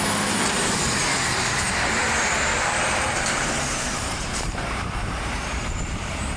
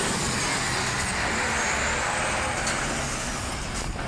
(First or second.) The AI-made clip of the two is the first